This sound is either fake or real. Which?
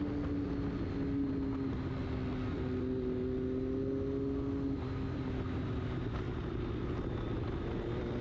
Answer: real